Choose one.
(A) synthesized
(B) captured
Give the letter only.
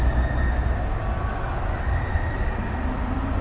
B